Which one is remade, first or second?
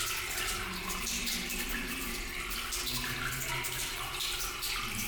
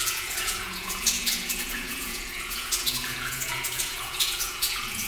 second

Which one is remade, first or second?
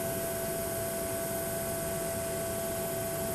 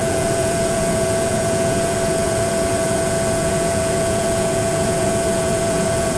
second